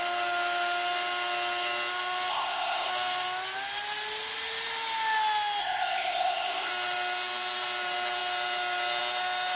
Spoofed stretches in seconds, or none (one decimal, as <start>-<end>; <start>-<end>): 2.3-2.9; 5.6-6.7